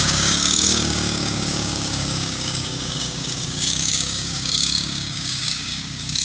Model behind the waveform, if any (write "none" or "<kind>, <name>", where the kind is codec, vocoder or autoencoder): codec, DAC